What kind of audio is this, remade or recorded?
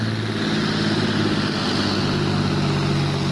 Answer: recorded